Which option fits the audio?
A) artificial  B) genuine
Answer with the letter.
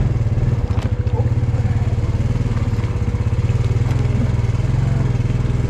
B